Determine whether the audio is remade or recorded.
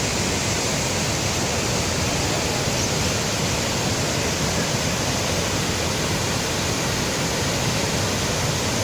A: recorded